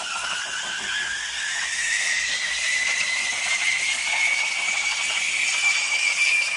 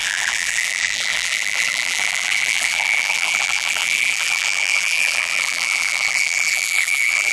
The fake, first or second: second